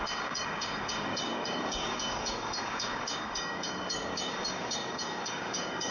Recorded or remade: remade